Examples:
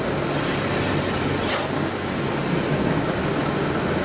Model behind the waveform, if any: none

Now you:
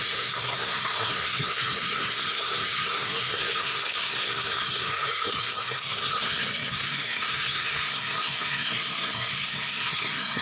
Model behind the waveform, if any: codec, SNAC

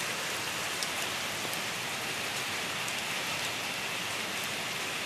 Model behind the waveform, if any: none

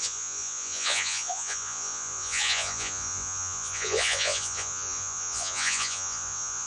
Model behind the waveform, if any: vocoder, Vocos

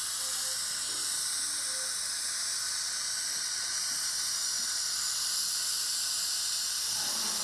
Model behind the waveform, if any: none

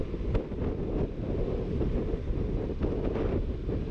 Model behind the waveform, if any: none